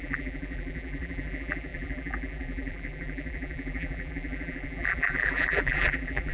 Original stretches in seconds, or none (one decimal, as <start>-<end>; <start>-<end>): none